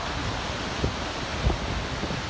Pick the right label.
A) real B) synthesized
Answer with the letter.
A